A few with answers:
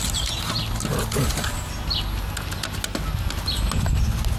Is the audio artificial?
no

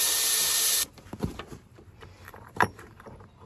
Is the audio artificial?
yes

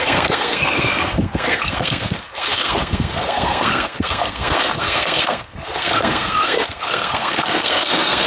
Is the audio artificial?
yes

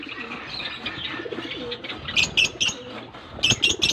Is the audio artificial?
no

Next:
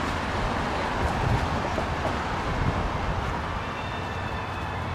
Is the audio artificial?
no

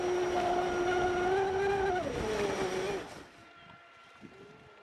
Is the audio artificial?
no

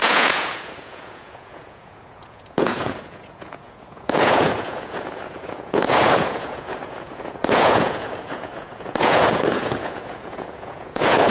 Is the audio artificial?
yes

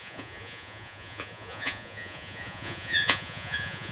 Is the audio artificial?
yes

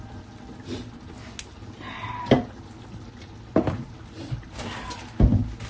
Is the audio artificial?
no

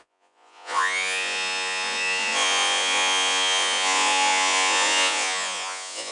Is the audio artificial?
yes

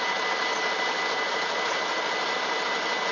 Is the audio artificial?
no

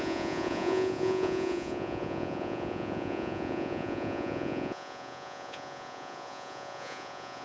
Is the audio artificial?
yes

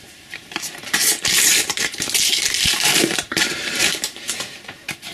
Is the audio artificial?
yes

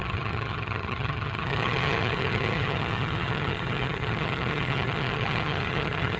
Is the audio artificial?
yes